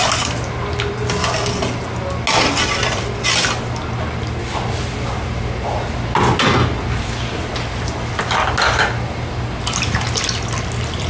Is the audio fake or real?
real